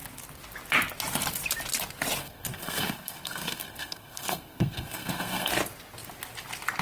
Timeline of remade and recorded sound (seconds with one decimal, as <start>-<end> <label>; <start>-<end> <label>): 0.0-2.2 recorded; 2.2-5.5 remade; 5.5-6.8 recorded